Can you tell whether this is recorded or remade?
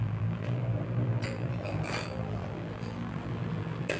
remade